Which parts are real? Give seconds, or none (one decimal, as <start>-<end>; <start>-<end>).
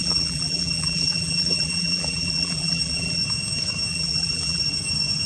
3.2-3.9; 4.6-5.3